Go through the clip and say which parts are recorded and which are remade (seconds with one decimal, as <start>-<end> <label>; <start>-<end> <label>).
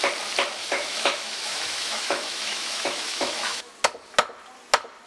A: 0.0-0.6 recorded; 0.6-3.7 remade; 3.7-5.1 recorded